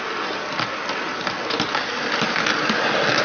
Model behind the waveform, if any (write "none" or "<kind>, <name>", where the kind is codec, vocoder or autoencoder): none